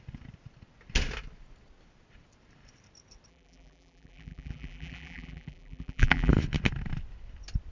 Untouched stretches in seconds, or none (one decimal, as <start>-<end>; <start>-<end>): 0.0-3.3; 6.3-7.7